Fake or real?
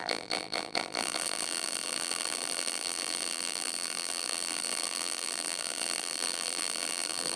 fake